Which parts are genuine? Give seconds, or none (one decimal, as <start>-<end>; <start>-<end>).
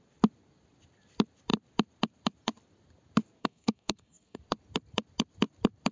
0.0-3.4; 4.4-5.9